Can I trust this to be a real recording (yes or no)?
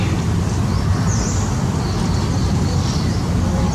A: yes